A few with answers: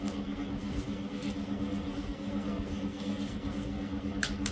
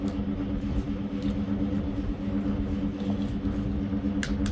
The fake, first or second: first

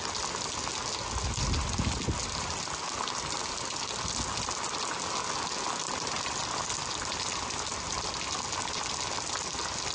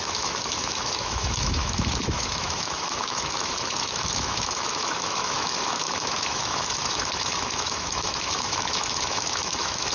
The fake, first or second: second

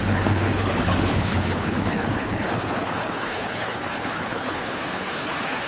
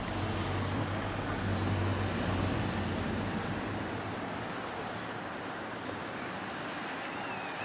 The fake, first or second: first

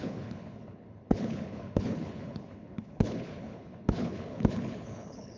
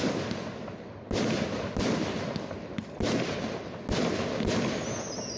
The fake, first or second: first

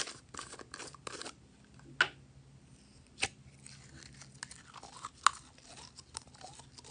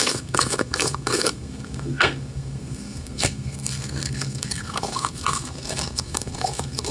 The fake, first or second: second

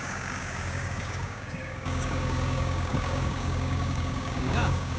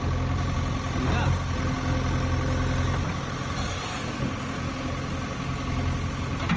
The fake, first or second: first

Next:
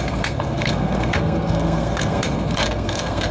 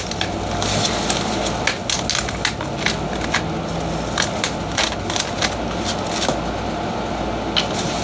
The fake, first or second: first